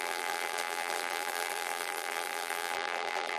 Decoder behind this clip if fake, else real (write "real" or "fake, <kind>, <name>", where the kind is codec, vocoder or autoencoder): fake, vocoder, BigVGAN v2